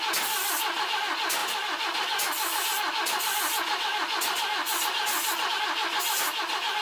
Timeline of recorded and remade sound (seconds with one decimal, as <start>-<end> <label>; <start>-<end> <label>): 0.0-6.8 recorded